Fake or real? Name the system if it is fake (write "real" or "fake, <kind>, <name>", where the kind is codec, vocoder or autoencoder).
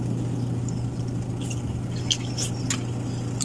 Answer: real